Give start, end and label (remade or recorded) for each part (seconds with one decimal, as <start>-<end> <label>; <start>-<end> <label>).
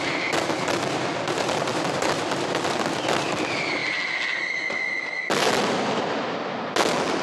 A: 0.0-7.2 recorded